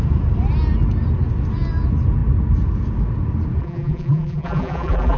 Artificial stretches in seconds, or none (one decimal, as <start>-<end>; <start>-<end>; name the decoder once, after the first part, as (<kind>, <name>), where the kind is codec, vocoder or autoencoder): 3.6-5.2 (vocoder, BigVGAN v2)